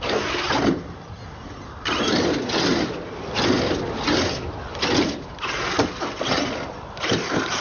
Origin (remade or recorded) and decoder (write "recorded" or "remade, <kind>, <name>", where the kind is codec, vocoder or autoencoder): recorded